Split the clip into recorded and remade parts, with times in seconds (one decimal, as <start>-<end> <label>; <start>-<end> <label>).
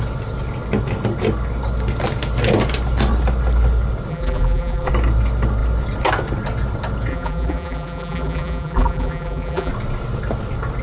0.0-4.1 recorded; 4.1-4.9 remade; 4.9-7.1 recorded; 7.1-9.7 remade; 9.7-10.8 recorded